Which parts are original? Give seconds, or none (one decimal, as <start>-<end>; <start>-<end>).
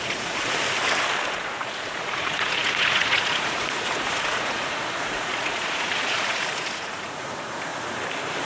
0.6-1.3; 7.7-8.5